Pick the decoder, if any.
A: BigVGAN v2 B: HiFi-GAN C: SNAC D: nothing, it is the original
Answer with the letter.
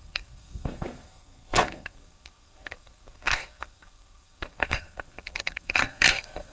C